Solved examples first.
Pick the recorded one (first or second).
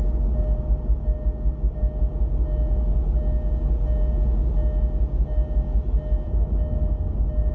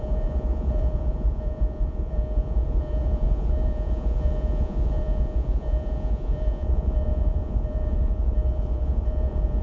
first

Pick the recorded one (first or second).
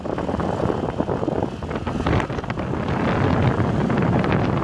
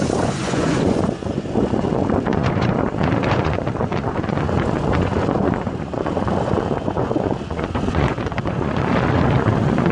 first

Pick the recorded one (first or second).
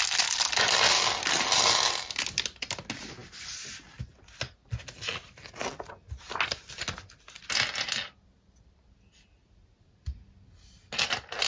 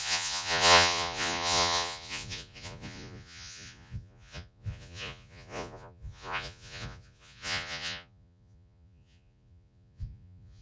first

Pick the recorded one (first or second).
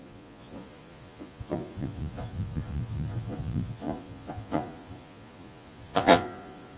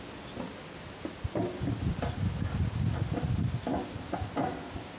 second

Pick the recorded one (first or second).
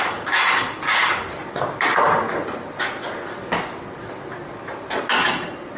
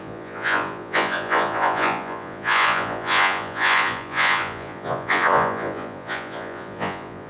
first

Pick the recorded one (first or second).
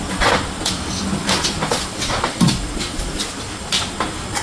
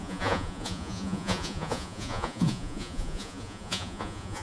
first